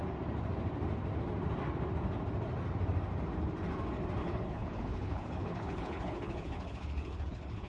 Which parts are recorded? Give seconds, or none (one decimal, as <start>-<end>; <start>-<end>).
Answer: 0.0-4.2